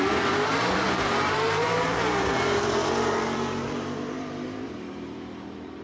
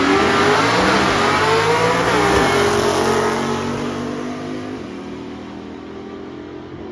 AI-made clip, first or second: first